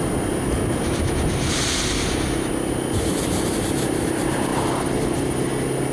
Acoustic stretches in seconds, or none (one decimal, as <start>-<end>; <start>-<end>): 0.0-4.5; 5.5-5.9

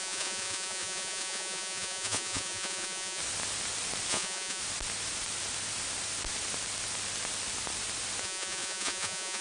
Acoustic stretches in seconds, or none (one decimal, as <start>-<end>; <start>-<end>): 3.2-4.1; 4.6-8.2

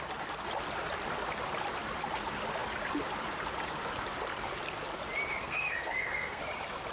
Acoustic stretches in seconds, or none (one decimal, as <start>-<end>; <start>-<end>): 0.0-5.4; 6.4-6.9

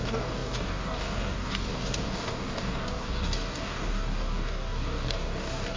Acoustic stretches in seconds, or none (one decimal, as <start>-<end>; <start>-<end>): none

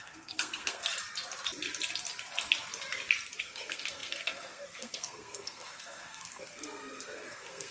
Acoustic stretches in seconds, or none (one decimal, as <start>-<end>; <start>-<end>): 0.9-3.4

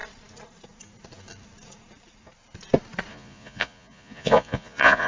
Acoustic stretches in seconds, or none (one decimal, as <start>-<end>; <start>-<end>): 0.0-3.1

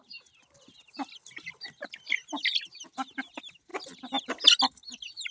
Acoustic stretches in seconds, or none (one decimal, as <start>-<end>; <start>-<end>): 0.0-5.3

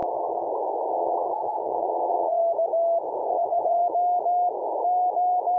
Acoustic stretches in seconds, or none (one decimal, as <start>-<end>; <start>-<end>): 0.5-0.9; 2.4-3.3; 3.8-5.6